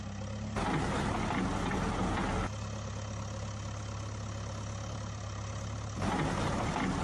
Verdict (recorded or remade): recorded